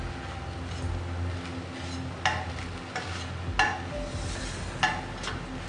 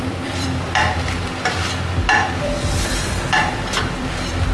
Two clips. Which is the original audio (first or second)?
first